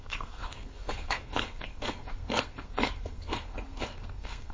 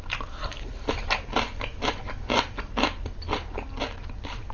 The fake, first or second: first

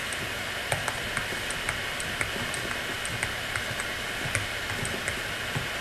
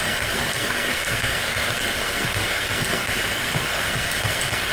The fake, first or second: second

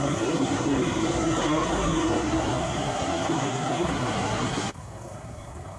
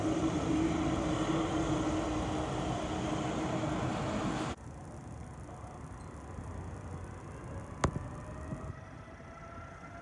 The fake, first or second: first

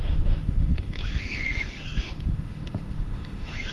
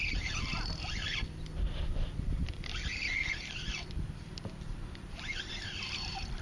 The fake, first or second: first